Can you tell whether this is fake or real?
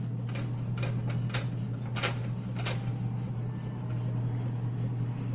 real